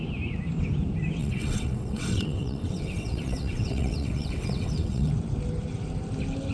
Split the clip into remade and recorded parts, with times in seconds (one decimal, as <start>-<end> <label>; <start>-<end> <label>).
0.0-1.2 recorded; 1.2-5.1 remade; 5.1-6.5 recorded

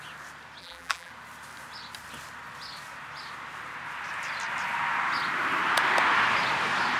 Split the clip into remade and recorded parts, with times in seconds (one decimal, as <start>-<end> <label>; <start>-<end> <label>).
0.0-0.6 recorded; 0.6-1.1 remade; 1.1-7.0 recorded

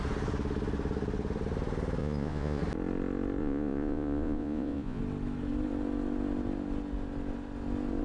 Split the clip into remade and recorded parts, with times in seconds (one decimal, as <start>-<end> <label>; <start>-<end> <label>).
0.0-2.0 recorded; 2.0-2.6 remade; 2.6-3.4 recorded; 3.4-5.0 remade; 5.0-8.0 recorded